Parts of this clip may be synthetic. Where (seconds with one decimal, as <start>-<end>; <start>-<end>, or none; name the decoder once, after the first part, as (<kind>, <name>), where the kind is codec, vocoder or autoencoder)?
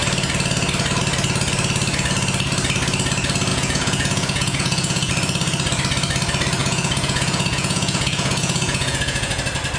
3.5-5.1 (vocoder, Vocos); 6.6-9.4